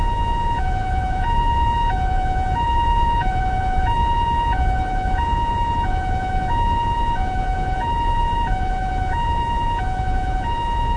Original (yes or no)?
no